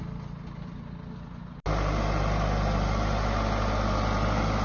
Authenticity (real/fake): real